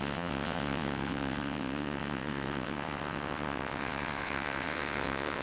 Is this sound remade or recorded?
remade